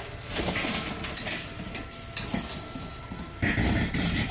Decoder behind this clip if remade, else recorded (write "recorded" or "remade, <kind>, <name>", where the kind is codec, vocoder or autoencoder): recorded